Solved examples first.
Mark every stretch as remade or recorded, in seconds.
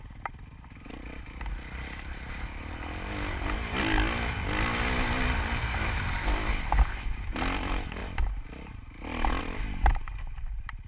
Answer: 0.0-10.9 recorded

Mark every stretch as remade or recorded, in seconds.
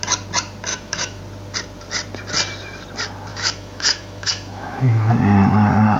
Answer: 0.0-0.7 recorded; 0.7-1.2 remade; 1.2-3.3 recorded; 3.3-5.1 remade; 5.1-6.0 recorded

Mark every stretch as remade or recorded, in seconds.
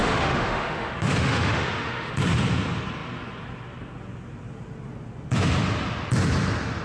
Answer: 0.0-2.1 remade; 2.1-6.8 recorded